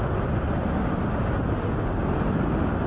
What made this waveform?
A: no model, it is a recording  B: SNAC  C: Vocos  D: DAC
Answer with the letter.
A